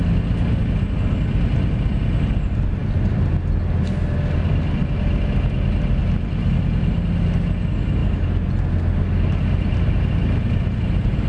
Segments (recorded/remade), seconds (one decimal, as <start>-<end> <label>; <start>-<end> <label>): 0.0-11.3 recorded